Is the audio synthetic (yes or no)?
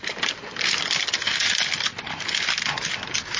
no